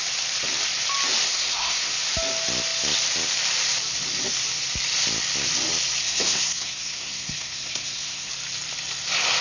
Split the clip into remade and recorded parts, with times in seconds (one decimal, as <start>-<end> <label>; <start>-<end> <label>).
0.0-1.3 recorded; 1.3-1.9 remade; 1.9-6.0 recorded; 6.0-8.3 remade; 8.3-9.4 recorded